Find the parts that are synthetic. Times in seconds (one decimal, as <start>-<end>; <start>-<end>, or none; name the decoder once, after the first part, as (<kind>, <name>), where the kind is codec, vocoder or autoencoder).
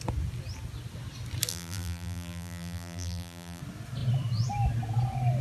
1.5-3.6 (vocoder, BigVGAN v2)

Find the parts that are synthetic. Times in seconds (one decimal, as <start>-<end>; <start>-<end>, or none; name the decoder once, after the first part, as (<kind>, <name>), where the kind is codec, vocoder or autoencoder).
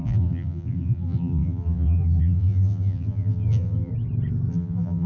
0.0-3.9 (vocoder, BigVGAN v2); 4.5-5.1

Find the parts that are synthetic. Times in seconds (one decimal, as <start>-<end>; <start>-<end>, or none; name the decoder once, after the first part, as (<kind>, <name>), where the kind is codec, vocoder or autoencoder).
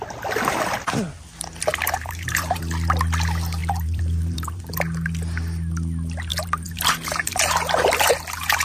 1.7-2.6 (vocoder, BigVGAN v2); 3.6-4.6; 6.3-8.1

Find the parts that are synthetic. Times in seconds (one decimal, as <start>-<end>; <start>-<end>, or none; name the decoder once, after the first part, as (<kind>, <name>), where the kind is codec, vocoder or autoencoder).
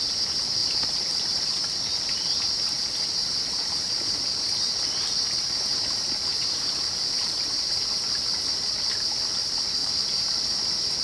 0.6-1.5 (vocoder, BigVGAN v2); 3.2-4.5; 6.3-7.7; 9.8-10.6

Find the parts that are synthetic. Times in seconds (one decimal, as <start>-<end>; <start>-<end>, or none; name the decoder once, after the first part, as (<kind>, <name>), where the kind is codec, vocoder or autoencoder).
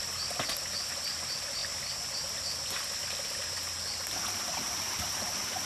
none